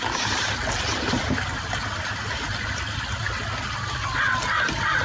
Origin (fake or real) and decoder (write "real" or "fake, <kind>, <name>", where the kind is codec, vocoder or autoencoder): real